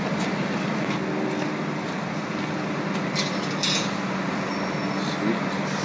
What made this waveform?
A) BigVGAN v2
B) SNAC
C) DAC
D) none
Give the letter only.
D